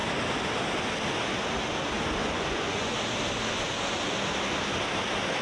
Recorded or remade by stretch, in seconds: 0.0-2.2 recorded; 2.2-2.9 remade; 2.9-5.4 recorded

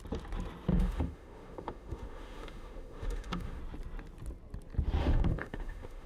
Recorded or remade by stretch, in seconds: 0.0-0.7 recorded; 0.7-3.6 remade; 3.6-5.0 recorded; 5.0-6.1 remade

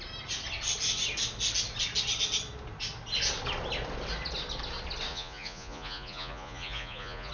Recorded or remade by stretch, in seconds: 0.0-5.1 recorded; 5.1-7.3 remade

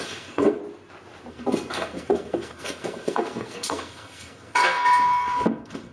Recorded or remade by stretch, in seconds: 0.0-0.6 remade; 0.6-1.3 recorded; 1.3-5.9 remade

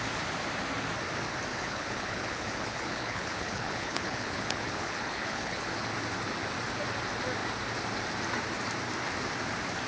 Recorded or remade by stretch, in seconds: 0.0-1.5 recorded; 1.5-5.9 remade; 5.9-9.9 recorded

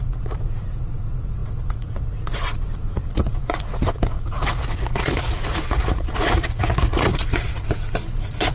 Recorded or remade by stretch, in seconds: 0.0-8.5 remade

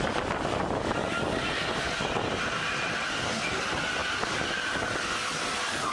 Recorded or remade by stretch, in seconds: 0.0-5.9 recorded

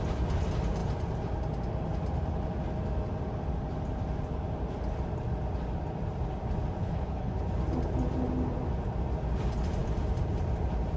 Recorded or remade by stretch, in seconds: 0.0-6.8 recorded; 6.8-7.3 remade; 7.3-11.0 recorded